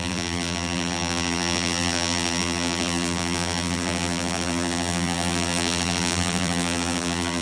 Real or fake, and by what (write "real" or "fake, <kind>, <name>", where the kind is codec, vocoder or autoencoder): fake, vocoder, BigVGAN v2